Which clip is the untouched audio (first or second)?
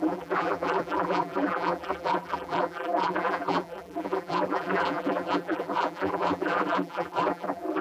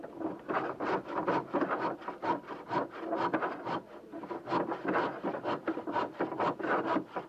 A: second